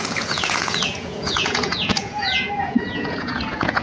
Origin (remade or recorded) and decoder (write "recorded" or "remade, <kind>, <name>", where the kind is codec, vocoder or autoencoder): remade, vocoder, Vocos